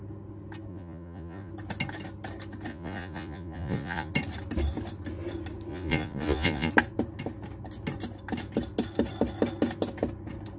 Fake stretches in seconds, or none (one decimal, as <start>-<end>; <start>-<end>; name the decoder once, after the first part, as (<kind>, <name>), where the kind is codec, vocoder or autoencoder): 0.7-1.5 (vocoder, Vocos); 2.7-4.1; 5.7-6.7